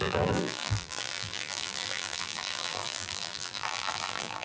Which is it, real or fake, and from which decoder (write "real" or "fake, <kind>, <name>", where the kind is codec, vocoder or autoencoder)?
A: fake, vocoder, BigVGAN v2